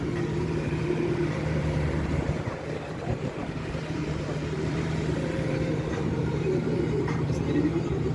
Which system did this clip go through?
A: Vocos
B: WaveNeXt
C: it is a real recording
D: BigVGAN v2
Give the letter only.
D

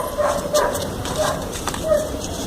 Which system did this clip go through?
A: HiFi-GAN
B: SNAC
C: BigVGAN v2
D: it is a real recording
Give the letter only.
C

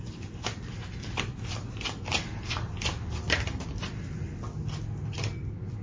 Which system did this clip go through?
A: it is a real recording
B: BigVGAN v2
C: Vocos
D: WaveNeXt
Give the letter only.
A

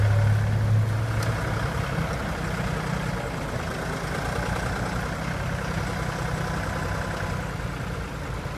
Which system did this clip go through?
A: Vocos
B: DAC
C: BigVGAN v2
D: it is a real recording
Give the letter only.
D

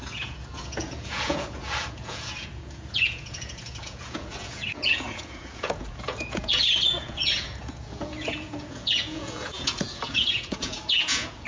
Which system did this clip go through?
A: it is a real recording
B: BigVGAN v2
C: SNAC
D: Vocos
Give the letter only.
D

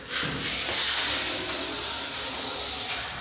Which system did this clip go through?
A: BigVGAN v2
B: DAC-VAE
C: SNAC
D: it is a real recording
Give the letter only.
D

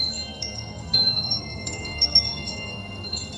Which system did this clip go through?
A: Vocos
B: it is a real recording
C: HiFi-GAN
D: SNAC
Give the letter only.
D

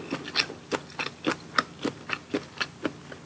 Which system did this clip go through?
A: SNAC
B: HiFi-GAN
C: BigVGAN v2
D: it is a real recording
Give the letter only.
D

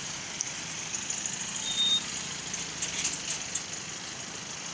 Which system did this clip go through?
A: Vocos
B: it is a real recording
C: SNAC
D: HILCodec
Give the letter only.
B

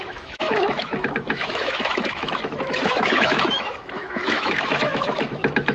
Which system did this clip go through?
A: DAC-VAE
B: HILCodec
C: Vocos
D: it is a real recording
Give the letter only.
A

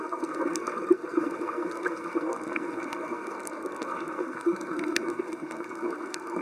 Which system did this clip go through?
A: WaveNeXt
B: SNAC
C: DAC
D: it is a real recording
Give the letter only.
B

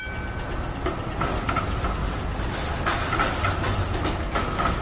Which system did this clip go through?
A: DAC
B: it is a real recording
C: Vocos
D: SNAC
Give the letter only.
B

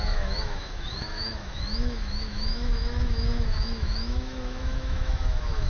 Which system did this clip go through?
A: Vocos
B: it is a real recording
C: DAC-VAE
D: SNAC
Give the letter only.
C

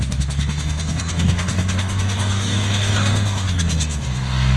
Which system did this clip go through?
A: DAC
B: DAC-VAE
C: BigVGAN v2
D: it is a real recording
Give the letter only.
A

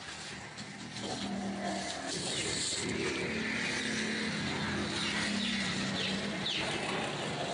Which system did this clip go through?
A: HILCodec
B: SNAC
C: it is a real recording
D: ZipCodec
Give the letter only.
C